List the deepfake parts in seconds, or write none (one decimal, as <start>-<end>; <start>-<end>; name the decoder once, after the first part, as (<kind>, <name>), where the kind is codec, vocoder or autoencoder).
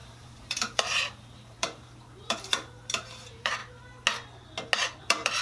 0.0-3.6 (vocoder, BigVGAN v2); 5.0-5.4